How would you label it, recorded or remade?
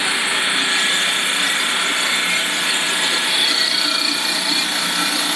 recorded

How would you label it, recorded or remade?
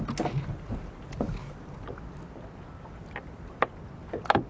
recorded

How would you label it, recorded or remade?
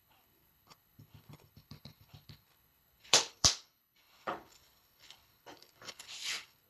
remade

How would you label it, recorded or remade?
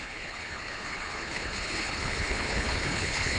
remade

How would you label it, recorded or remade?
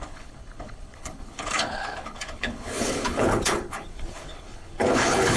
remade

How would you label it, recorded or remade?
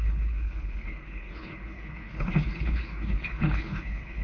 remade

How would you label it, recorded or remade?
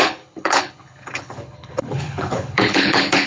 remade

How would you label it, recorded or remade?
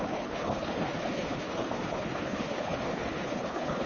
remade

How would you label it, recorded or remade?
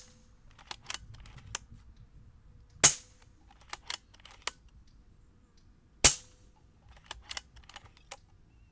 recorded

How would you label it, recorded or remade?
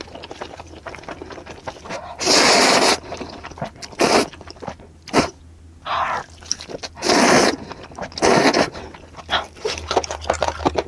recorded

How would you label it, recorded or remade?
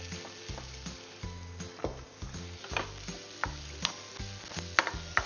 recorded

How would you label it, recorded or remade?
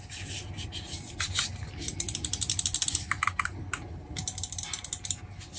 recorded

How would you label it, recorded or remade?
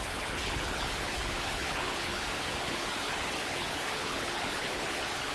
remade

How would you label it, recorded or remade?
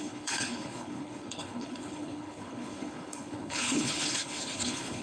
remade